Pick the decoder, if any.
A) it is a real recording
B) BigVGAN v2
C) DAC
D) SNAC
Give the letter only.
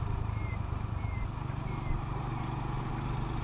B